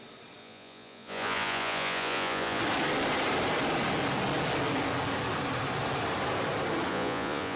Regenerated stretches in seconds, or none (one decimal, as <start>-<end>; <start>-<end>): 0.4-2.6; 6.9-7.6